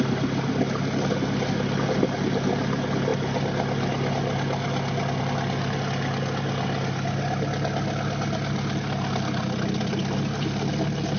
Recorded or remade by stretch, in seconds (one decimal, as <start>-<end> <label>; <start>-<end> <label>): 0.0-11.2 recorded